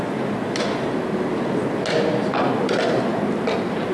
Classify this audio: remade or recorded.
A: recorded